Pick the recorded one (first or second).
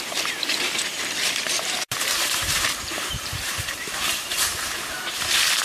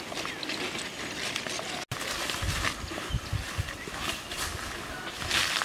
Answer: second